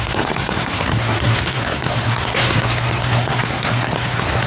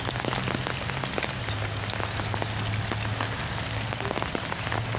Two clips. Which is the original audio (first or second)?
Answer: second